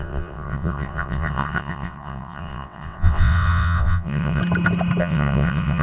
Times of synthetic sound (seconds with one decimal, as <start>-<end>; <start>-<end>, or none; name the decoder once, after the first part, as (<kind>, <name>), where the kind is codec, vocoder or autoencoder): 0.0-4.4 (vocoder, WaveNeXt); 5.0-5.8